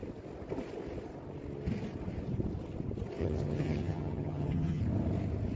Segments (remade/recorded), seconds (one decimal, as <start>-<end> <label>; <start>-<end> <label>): 0.0-3.2 recorded; 3.2-4.8 remade; 4.8-5.6 recorded